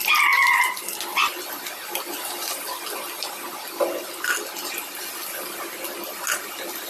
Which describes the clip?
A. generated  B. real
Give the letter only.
B